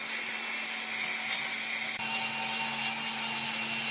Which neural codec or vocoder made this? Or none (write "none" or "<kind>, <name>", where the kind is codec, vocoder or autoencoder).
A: none